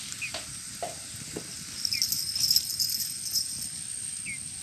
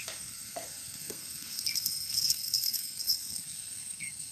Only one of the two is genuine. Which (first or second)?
first